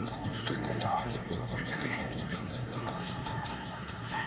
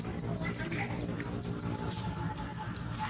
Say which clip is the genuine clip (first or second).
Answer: second